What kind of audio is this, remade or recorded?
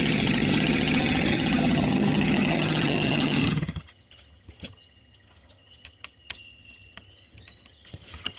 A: remade